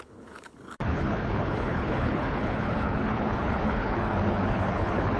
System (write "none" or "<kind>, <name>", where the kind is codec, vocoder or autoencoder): codec, HILCodec